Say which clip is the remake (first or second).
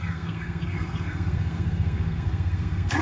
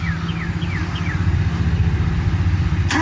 first